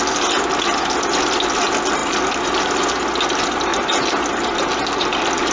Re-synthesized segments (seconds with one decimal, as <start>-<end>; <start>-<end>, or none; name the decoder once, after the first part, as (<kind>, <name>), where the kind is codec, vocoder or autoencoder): none